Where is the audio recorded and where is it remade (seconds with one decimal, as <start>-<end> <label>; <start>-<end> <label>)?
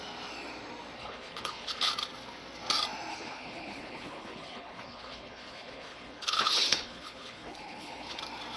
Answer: 0.0-1.0 recorded; 1.0-1.9 remade; 1.9-3.1 recorded; 3.1-8.2 remade; 8.2-8.6 recorded